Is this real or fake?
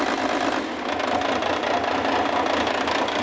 real